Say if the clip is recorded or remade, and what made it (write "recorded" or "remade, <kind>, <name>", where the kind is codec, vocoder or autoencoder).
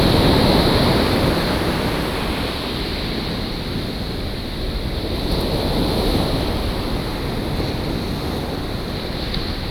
recorded